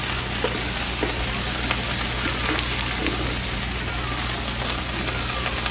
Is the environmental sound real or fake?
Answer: real